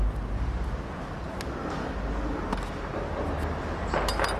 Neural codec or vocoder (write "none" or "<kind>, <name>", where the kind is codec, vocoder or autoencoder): none